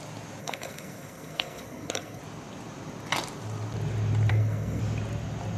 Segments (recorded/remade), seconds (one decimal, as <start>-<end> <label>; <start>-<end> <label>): 0.0-0.4 recorded; 0.4-2.2 remade; 2.2-4.3 recorded; 4.3-4.8 remade; 4.8-5.6 recorded